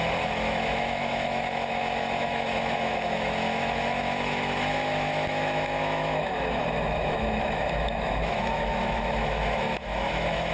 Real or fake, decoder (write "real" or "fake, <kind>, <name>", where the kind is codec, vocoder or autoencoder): fake, autoencoder, DAC-VAE